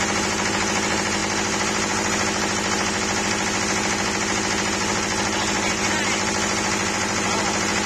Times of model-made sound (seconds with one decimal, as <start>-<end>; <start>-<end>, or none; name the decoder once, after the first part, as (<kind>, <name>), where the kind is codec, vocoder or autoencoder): none